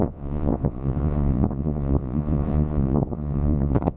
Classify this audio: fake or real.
fake